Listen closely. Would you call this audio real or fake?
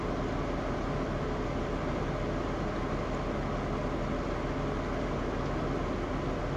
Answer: real